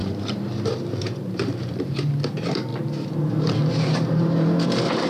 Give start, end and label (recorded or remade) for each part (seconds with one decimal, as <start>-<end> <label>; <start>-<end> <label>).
0.0-1.9 remade; 1.9-2.7 recorded; 2.7-5.1 remade